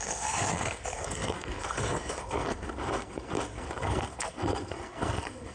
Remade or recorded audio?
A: remade